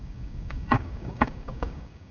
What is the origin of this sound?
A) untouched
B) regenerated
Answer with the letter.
B